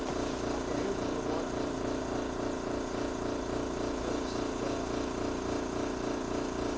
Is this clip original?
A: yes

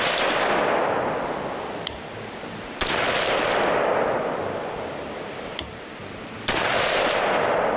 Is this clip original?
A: yes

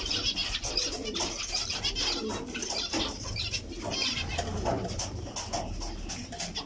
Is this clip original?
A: yes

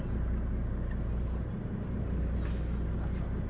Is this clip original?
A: yes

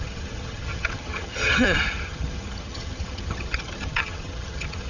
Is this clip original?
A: no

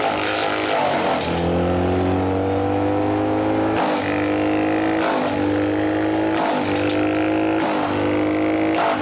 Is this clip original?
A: yes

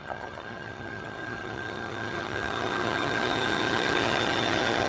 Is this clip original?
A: no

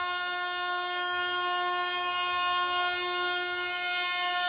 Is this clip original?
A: yes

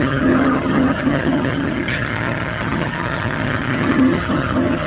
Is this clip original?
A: no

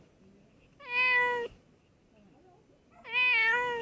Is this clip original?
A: yes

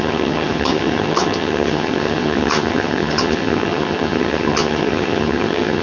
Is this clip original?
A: no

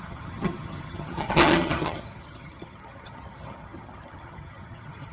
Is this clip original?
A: no